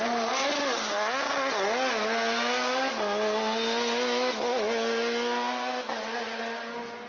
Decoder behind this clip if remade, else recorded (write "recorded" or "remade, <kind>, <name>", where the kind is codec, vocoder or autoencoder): recorded